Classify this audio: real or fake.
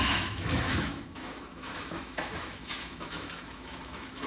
fake